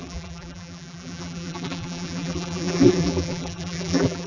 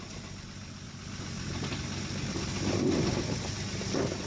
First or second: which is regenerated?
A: first